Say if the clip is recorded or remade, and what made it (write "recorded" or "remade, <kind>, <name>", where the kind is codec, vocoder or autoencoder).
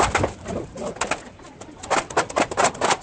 recorded